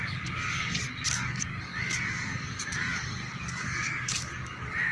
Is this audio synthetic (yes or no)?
yes